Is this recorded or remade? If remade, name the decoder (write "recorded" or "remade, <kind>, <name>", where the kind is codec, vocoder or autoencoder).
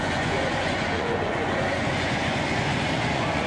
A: remade, vocoder, Vocos